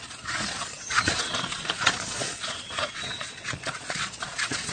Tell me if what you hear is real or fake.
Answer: fake